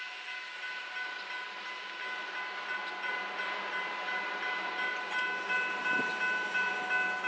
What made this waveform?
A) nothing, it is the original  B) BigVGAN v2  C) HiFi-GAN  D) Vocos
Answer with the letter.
A